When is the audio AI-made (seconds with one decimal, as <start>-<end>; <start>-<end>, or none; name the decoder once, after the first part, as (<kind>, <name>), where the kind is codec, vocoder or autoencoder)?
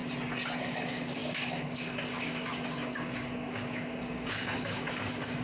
0.6-5.4 (codec, DAC)